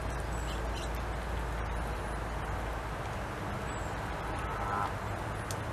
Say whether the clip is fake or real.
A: real